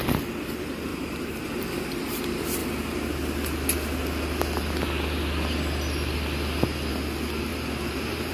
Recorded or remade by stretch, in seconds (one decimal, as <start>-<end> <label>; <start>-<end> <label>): 0.0-0.9 recorded; 0.9-1.5 remade; 1.5-7.5 recorded; 7.5-8.3 remade